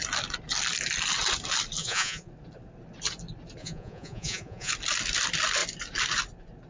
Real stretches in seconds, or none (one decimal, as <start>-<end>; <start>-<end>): 0.0-1.8; 2.3-3.6; 4.7-6.7